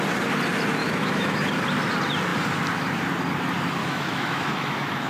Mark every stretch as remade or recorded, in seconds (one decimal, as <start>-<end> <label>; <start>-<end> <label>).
0.0-0.8 recorded; 0.8-1.4 remade; 1.4-3.8 recorded; 3.8-5.1 remade